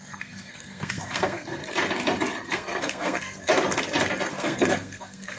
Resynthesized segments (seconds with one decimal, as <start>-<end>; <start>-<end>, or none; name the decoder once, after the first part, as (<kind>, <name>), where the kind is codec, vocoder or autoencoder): 0.0-1.6 (codec, SNAC); 2.5-3.5; 4.3-5.4